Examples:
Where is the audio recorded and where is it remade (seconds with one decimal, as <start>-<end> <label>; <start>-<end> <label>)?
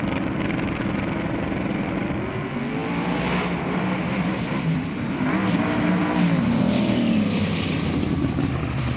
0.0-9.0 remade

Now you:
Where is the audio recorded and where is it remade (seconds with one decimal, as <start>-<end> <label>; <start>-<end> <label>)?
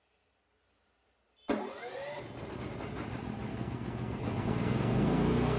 0.0-3.5 recorded; 3.5-5.6 remade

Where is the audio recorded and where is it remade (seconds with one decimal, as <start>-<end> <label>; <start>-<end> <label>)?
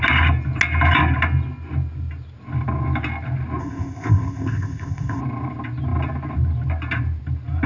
0.0-3.6 recorded; 3.6-5.2 remade; 5.2-7.7 recorded